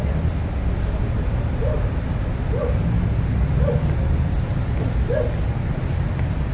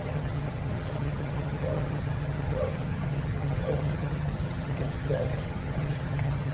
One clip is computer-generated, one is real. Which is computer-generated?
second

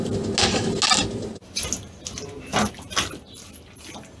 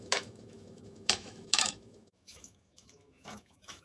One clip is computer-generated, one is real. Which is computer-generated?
second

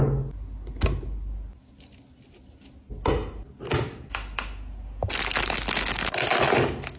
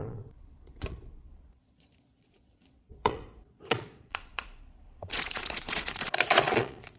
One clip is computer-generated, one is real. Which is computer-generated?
second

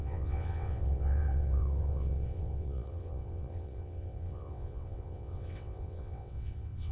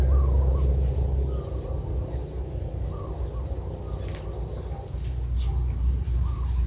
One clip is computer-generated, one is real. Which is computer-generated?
first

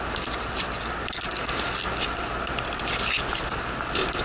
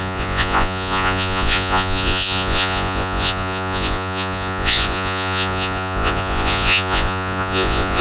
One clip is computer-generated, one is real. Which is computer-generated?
second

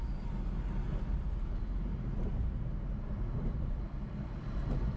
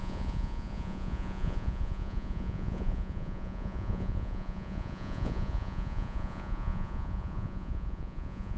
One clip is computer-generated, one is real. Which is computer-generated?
second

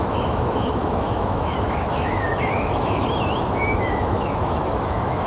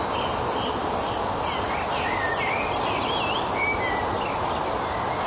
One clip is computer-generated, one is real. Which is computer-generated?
first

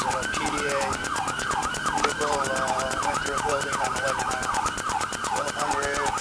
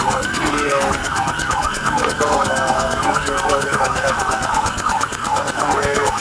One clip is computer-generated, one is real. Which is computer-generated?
second